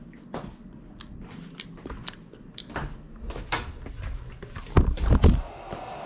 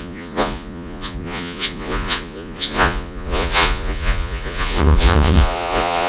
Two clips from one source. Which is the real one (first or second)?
first